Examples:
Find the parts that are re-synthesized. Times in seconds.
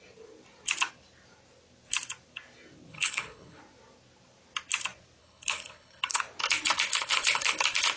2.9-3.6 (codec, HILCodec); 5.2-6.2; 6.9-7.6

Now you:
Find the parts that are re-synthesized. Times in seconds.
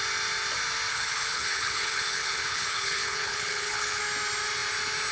0.9-4.0 (codec, HILCodec)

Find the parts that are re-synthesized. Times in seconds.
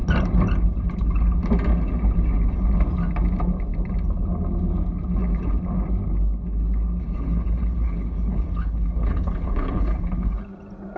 7.0-10.4 (codec, HILCodec)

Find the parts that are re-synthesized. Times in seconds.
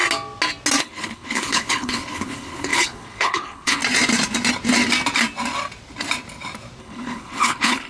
0.8-3.8 (codec, HILCodec); 6.8-7.9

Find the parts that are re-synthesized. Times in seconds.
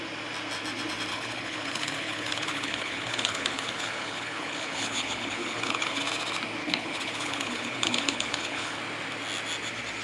1.1-6.0 (codec, HILCodec); 6.6-8.8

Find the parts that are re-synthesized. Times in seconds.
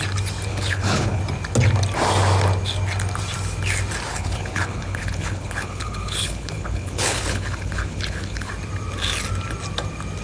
0.5-1.2 (codec, HILCodec); 4.1-8.5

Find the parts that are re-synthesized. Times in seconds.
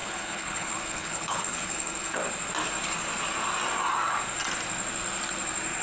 0.0-2.2 (codec, HILCodec)